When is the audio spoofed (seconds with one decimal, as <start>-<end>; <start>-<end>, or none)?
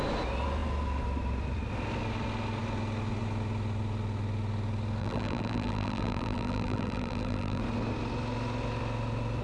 5.0-7.6